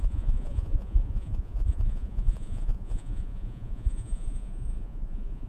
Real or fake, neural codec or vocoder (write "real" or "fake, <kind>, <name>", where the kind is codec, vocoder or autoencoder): fake, vocoder, Vocos